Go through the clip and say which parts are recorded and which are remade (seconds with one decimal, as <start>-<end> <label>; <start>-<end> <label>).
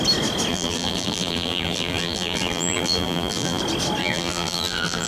0.0-0.5 recorded; 0.5-3.6 remade; 3.6-4.0 recorded; 4.0-5.1 remade